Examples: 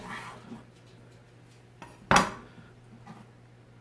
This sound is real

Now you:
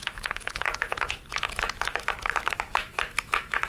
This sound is fake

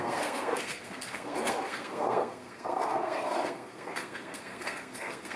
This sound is fake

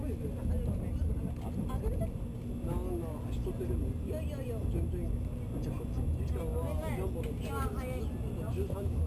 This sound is real